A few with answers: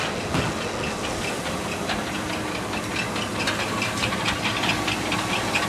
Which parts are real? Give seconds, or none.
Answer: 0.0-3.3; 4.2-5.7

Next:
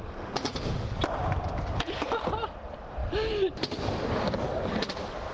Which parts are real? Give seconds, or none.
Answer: 0.0-0.5; 2.2-3.0; 4.1-5.3

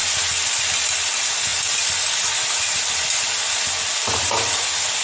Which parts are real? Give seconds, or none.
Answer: 0.6-5.0